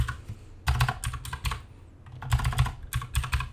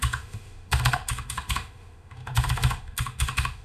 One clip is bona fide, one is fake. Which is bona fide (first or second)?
first